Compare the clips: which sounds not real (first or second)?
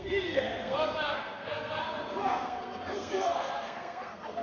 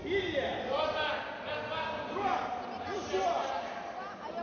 first